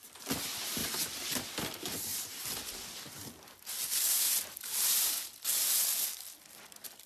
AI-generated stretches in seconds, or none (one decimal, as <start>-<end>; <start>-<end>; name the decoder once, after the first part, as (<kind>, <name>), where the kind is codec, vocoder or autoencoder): 0.8-1.4 (vocoder, BigVGAN v2); 2.1-5.9